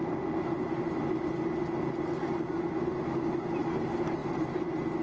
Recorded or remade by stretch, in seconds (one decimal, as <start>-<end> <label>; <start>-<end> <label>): 0.0-3.0 recorded; 3.0-5.0 remade